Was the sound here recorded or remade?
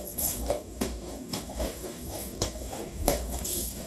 remade